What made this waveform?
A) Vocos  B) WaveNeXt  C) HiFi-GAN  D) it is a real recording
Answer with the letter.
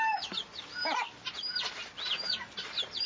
D